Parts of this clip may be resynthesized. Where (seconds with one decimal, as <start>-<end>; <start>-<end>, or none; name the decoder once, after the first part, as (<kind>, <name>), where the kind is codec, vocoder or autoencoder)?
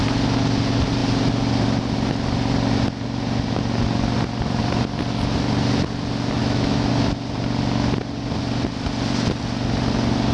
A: 6.4-6.9 (autoencoder, DAC-VAE)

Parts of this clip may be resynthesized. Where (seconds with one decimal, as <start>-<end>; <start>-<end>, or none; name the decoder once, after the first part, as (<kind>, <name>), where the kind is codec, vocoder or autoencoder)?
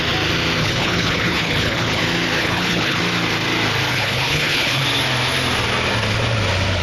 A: 0.6-2.0 (codec, HILCodec); 2.4-3.0; 3.9-4.8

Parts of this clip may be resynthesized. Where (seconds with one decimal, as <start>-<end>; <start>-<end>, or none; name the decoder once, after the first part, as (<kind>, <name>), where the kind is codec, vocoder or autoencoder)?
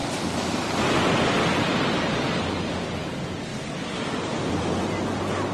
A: none